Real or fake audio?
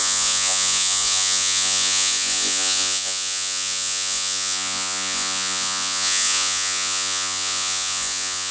fake